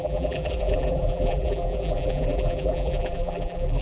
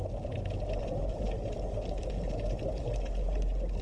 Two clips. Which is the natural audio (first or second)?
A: second